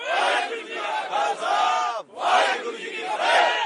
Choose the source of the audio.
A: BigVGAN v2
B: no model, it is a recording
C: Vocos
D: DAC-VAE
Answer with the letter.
B